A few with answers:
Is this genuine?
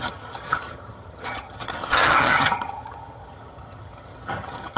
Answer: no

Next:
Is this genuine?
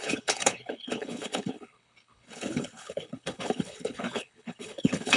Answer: no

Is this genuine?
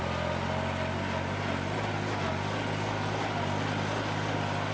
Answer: yes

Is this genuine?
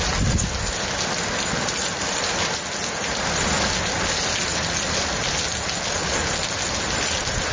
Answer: yes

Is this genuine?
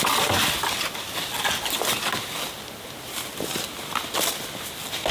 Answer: yes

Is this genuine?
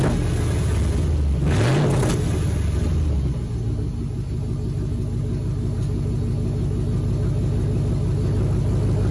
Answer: yes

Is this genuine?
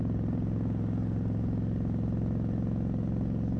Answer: yes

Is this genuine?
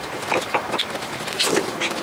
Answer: yes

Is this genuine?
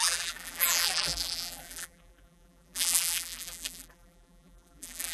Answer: no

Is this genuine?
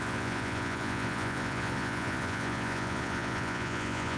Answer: no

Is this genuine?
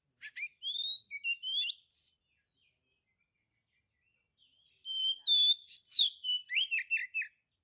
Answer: yes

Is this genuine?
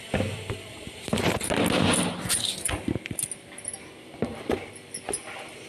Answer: no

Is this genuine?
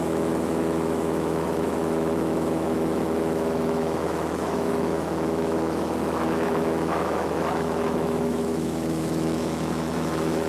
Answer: no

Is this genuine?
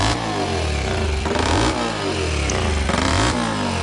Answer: yes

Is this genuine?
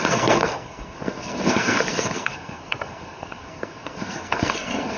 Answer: no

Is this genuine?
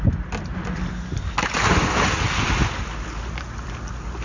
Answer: yes